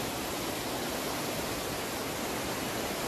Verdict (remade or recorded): remade